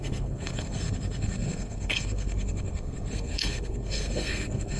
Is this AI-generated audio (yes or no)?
yes